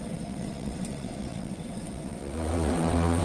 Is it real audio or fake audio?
fake